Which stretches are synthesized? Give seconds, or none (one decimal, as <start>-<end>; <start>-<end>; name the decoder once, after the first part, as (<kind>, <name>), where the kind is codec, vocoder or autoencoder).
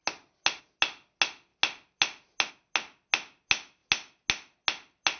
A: none